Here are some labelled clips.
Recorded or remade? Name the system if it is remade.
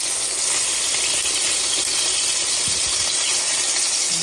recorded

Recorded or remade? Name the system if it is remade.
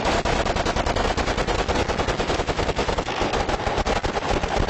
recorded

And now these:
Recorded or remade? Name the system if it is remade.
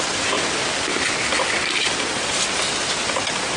recorded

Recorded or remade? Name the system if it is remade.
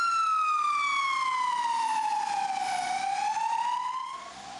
recorded